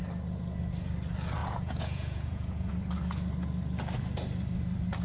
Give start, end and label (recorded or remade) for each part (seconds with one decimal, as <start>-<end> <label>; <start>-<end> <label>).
0.0-1.4 recorded; 1.4-2.7 remade; 2.7-5.0 recorded